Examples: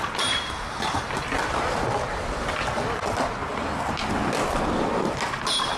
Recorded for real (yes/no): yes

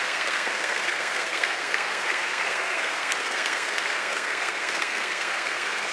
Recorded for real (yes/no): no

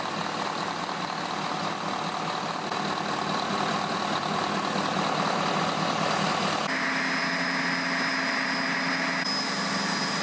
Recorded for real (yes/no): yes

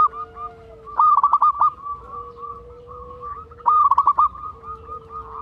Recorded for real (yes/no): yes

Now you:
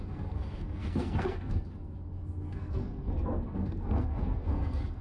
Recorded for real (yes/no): no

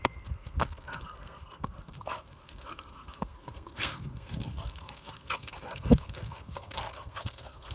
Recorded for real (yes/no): no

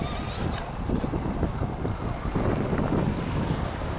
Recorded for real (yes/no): yes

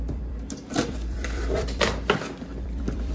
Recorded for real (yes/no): no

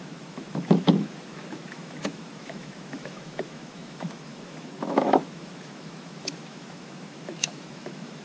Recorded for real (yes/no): no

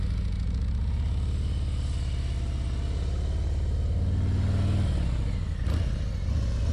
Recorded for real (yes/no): yes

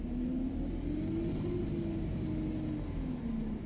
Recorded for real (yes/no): yes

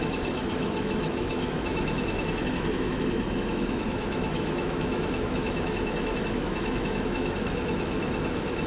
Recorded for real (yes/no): no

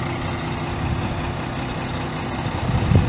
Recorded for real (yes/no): yes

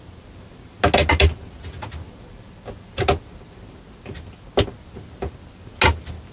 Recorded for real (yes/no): yes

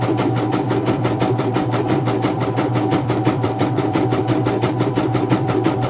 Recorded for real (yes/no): no